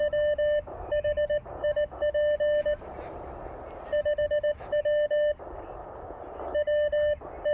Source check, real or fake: real